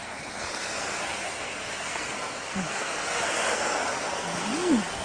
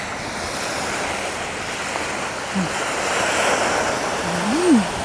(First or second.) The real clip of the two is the second